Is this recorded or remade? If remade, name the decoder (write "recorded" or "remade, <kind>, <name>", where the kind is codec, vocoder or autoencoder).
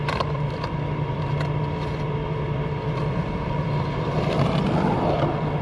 remade, vocoder, BigVGAN v2